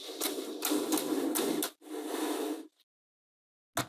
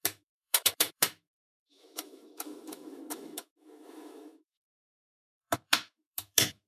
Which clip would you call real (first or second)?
first